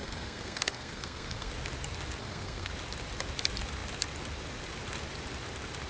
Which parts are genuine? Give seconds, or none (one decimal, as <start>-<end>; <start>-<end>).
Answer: 1.5-2.2; 2.7-5.9